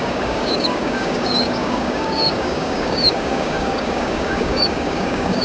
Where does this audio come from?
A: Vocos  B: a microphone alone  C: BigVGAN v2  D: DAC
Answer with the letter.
D